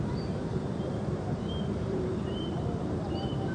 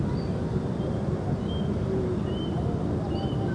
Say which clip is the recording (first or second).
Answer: second